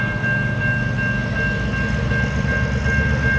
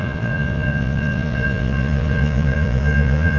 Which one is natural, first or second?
first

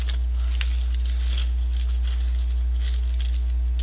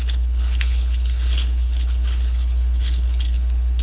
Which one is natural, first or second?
first